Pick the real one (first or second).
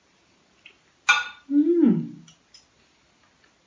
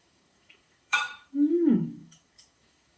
first